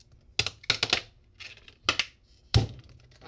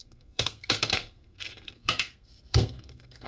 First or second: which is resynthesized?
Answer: second